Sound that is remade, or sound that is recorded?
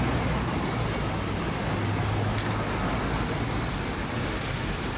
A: recorded